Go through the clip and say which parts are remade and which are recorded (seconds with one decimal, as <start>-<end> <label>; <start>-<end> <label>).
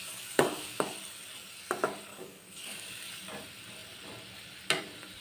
0.0-1.0 remade; 1.0-2.1 recorded; 2.1-3.1 remade; 3.1-5.2 recorded